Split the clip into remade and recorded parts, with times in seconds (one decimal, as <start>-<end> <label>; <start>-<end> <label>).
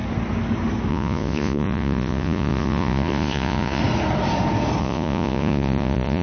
0.0-0.9 recorded; 0.9-3.8 remade; 3.8-4.8 recorded; 4.8-6.2 remade